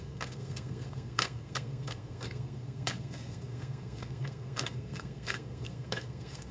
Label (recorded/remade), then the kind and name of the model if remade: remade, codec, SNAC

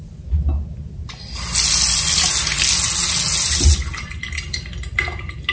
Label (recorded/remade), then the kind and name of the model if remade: recorded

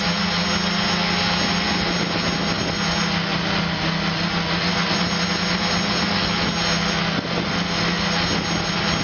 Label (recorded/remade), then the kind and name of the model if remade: recorded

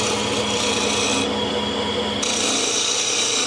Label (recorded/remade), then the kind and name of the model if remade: recorded